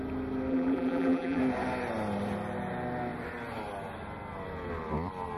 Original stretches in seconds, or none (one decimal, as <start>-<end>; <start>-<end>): 0.0-0.5; 1.4-5.4